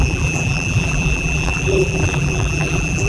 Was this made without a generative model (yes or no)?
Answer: no